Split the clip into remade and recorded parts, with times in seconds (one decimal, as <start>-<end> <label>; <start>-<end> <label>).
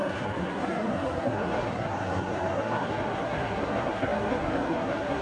0.0-5.2 remade